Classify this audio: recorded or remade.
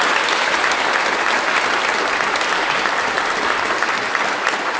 recorded